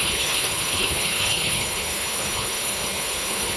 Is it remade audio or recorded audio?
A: remade